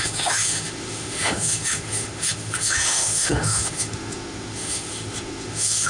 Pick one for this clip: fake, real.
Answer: fake